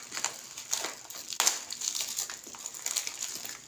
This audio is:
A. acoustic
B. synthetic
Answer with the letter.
A